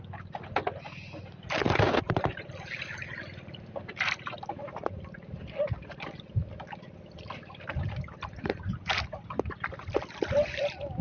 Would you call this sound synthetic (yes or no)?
no